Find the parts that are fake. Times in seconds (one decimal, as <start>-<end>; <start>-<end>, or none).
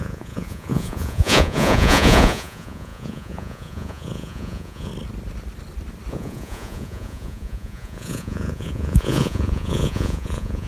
0.0-4.9; 6.1-10.7